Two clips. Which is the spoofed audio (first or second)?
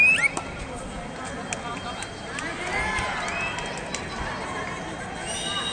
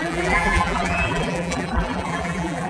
second